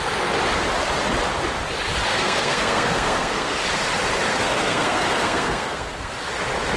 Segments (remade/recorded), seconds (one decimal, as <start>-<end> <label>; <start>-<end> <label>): 0.0-2.1 recorded; 2.1-3.6 remade; 3.6-4.3 recorded; 4.3-6.1 remade; 6.1-6.8 recorded

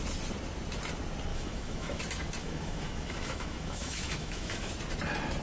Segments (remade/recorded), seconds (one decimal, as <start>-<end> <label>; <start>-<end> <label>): 0.0-1.3 recorded; 1.3-2.0 remade; 2.0-2.4 recorded; 2.4-4.7 remade; 4.7-5.4 recorded

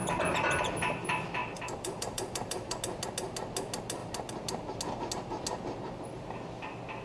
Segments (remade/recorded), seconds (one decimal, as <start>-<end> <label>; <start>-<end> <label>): 0.0-0.6 remade; 0.6-1.4 recorded; 1.4-2.8 remade; 2.8-7.0 recorded

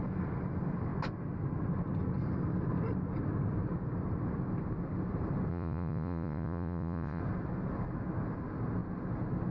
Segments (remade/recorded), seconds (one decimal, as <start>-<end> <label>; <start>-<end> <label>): 0.0-5.5 recorded; 5.5-7.2 remade; 7.2-9.5 recorded

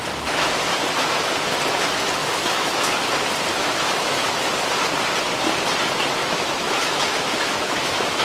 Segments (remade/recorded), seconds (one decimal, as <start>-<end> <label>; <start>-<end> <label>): 0.0-2.2 recorded; 2.2-3.0 remade; 3.0-3.5 recorded; 3.5-4.5 remade; 4.5-6.2 recorded; 6.2-8.2 remade